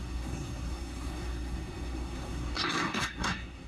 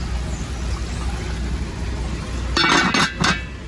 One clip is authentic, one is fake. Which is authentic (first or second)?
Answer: second